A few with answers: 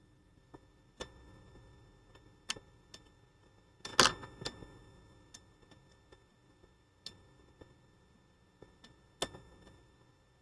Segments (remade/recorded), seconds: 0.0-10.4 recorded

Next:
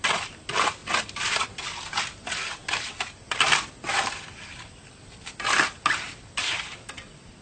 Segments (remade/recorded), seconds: 0.0-2.6 recorded; 2.6-4.4 remade; 4.4-7.4 recorded

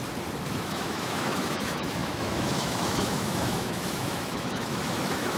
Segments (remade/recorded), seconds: 0.0-0.5 recorded; 0.5-5.4 remade

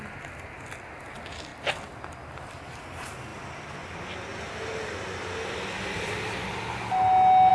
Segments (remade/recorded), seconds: 0.0-7.5 recorded

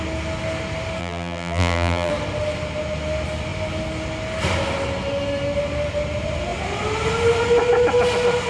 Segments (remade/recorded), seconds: 0.0-1.0 recorded; 1.0-2.1 remade; 2.1-8.5 recorded

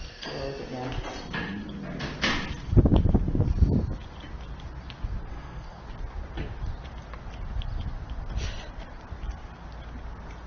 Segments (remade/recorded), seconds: 0.0-5.3 recorded; 5.3-5.8 remade; 5.8-10.5 recorded

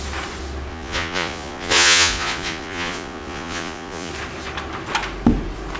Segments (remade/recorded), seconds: 0.0-0.7 recorded; 0.7-4.1 remade; 4.1-5.8 recorded